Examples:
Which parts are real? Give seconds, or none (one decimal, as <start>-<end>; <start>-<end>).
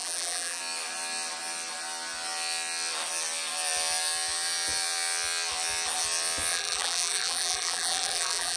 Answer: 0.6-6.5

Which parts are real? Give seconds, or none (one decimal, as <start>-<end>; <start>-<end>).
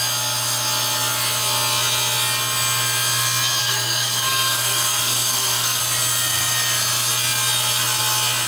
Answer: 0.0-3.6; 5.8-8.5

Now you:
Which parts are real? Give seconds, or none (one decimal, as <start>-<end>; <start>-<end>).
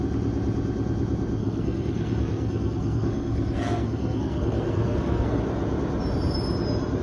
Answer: 0.0-1.4; 5.4-7.0